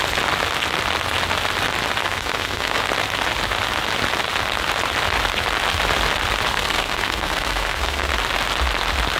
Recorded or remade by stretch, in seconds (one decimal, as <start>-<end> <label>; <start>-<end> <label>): 0.0-2.0 recorded; 2.0-2.8 remade; 2.8-6.5 recorded; 6.5-8.1 remade; 8.1-9.2 recorded